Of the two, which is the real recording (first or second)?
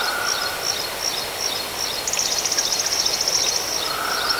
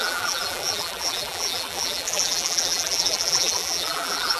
first